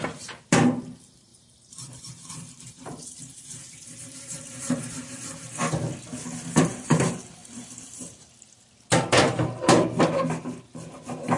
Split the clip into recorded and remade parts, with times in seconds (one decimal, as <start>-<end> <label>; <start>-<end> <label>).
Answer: 0.0-5.6 remade; 5.6-6.6 recorded; 6.6-7.4 remade; 7.4-10.9 recorded; 10.9-11.4 remade